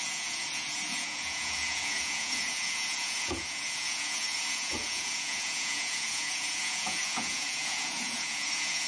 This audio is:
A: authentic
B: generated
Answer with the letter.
B